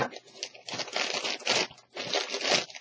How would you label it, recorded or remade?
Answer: recorded